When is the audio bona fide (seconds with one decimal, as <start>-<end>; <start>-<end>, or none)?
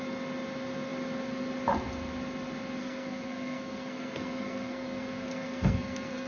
0.0-2.8